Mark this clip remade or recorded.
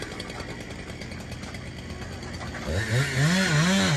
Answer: recorded